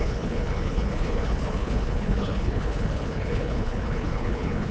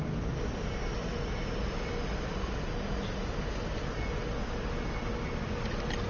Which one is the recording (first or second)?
second